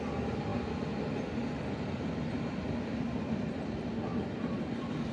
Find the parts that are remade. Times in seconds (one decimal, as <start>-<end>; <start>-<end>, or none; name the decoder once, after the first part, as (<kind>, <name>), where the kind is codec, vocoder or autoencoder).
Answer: none